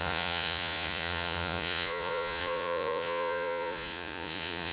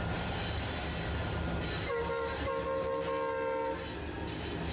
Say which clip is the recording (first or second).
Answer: second